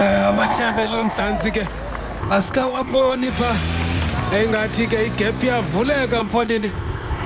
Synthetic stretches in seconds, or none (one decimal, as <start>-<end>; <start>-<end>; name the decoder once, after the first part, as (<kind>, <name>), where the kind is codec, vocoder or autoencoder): 0.0-1.2 (codec, ZipCodec); 2.2-3.3; 6.2-7.3